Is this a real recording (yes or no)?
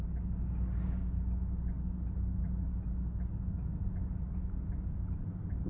yes